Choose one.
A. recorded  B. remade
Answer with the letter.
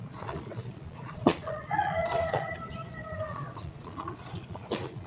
B